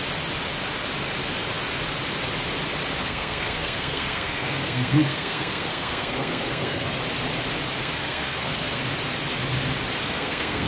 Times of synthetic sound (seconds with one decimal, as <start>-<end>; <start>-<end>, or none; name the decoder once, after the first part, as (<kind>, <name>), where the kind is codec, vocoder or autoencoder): 3.0-7.0 (codec, SNAC); 7.8-8.8; 10.0-10.7